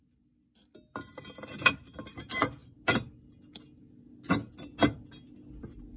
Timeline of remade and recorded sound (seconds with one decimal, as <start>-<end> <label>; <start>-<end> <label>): 0.0-6.0 recorded